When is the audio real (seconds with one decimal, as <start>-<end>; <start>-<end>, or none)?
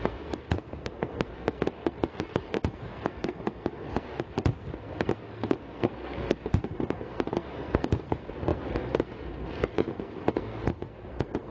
none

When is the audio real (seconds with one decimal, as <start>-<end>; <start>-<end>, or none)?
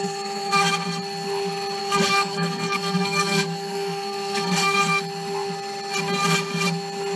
0.5-1.8; 4.8-7.2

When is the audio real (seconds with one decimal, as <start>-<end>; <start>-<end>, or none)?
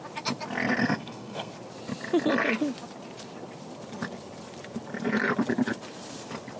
0.0-0.8; 1.5-6.6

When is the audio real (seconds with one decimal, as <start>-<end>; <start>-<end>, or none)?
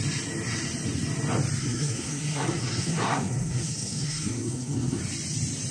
0.0-1.6; 5.0-5.7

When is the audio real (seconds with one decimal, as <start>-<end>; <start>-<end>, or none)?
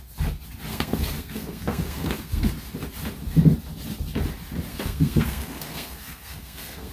0.0-0.7; 2.5-4.7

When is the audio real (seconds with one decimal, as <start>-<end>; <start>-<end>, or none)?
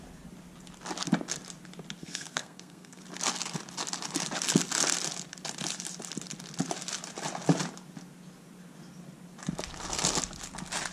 0.0-2.0; 3.0-10.9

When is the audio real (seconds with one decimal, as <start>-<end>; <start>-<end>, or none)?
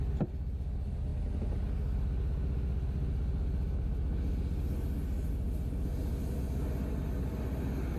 0.0-8.0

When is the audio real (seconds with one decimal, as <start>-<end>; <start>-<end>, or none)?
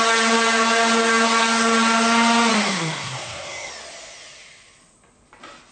0.0-2.5; 3.7-5.7